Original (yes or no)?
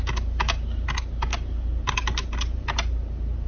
yes